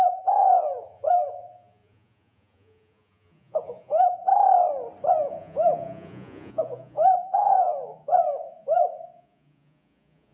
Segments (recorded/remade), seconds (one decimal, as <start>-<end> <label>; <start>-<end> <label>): 0.0-4.3 remade; 4.3-5.1 recorded; 5.1-10.3 remade